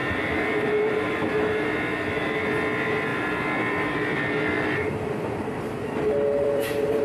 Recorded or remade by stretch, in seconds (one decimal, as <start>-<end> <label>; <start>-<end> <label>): 0.0-1.4 remade; 1.4-3.1 recorded; 3.1-7.0 remade